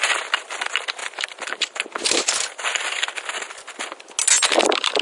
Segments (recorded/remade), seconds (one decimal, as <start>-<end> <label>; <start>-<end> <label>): 0.0-1.0 recorded; 1.0-4.0 remade; 4.0-5.0 recorded

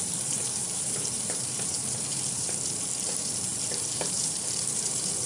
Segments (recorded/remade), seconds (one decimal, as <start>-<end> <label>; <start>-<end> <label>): 0.0-5.3 remade